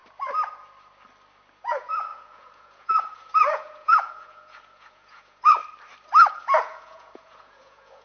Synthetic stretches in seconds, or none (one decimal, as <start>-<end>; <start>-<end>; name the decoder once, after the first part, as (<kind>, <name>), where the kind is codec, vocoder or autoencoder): 1.6-5.6 (vocoder, Vocos); 6.3-8.0